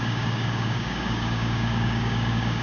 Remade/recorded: remade